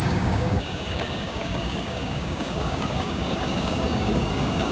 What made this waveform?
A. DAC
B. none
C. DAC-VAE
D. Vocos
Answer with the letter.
A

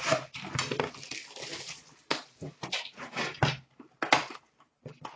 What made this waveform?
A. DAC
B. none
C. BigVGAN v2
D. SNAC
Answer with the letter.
B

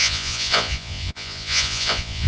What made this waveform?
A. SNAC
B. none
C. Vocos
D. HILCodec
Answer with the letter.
C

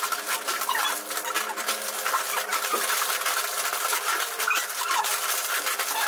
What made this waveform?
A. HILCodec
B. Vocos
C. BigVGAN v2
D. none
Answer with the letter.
D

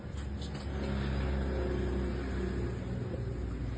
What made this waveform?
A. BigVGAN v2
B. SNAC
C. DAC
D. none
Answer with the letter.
D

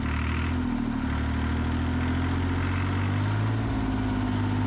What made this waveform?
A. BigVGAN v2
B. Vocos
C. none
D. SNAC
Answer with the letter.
C